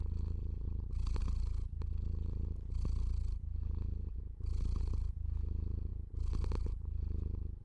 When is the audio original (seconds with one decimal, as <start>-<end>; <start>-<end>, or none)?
0.0-7.6